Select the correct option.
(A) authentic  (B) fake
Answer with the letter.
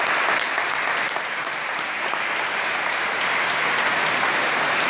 A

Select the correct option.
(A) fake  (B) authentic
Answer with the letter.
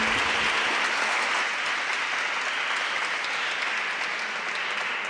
B